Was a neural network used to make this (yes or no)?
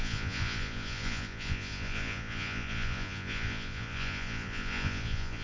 yes